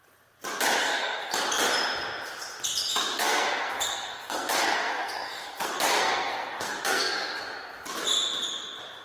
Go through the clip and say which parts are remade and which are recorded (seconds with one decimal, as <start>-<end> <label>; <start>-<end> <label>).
0.0-0.8 recorded; 0.8-1.3 remade; 1.3-3.1 recorded; 3.1-7.4 remade; 7.4-9.0 recorded